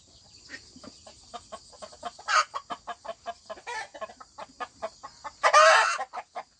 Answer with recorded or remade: recorded